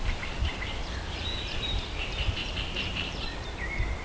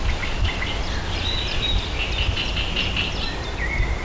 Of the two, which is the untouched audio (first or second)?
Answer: second